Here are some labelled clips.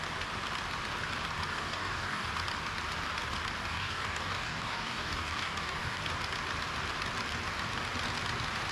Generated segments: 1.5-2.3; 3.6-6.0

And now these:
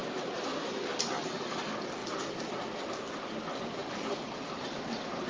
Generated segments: 0.0-1.5; 2.0-2.7; 3.8-5.3

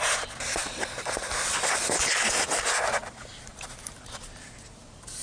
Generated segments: none

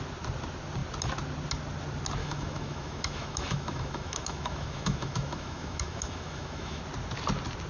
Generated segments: 2.2-6.8

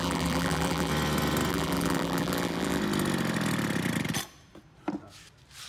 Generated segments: 0.0-0.9; 1.5-2.8